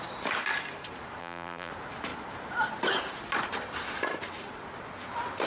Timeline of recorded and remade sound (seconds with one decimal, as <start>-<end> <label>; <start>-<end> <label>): 0.0-1.2 recorded; 1.2-1.7 remade; 1.7-5.5 recorded